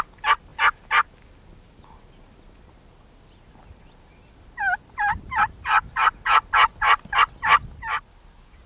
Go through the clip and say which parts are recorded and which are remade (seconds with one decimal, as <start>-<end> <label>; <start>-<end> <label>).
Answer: 0.0-8.7 recorded